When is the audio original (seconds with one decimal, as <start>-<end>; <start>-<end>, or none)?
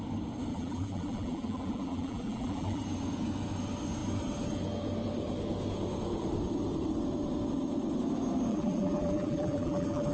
0.0-0.5; 2.8-8.5